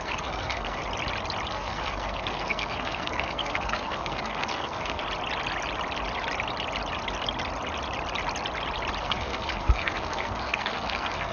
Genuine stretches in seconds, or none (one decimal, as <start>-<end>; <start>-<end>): 0.8-1.5; 5.0-9.0